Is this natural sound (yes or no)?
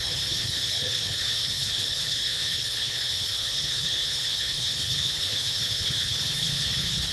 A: no